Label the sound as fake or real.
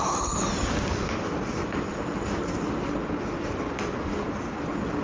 real